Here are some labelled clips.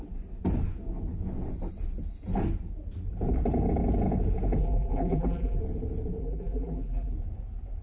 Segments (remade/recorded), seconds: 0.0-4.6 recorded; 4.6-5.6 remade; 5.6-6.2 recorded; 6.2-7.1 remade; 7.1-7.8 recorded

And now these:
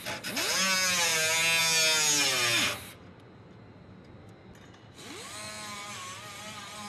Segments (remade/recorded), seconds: 0.0-6.9 recorded

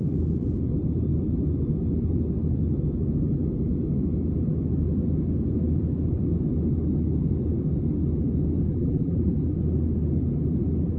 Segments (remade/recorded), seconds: 0.0-8.7 recorded; 8.7-9.3 remade; 9.3-11.0 recorded